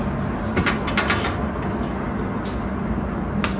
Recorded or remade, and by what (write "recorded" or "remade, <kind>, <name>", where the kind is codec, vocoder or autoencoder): recorded